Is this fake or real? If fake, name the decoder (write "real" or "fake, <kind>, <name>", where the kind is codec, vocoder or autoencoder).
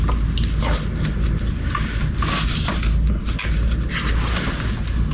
real